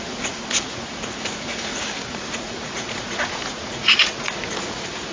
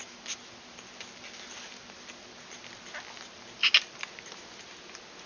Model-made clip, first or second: first